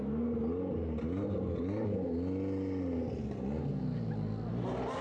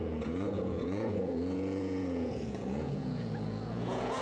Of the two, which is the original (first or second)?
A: first